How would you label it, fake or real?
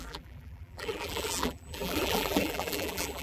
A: fake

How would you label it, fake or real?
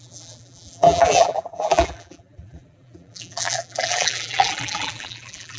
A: fake